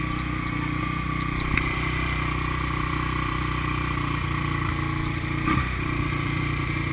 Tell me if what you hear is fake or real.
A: fake